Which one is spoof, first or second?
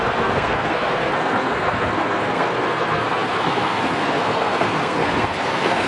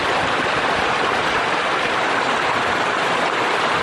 first